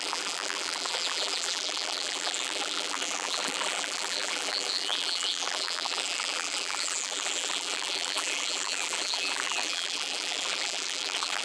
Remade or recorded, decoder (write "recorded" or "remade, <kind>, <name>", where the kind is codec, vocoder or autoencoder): remade, vocoder, BigVGAN v2